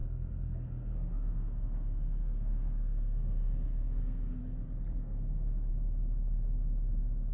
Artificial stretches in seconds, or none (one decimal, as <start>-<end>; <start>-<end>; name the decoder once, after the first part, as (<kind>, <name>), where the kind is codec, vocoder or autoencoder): 0.0-4.4 (codec, SNAC); 4.9-5.7